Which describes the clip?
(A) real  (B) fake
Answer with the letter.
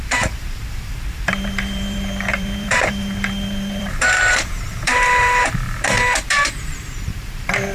B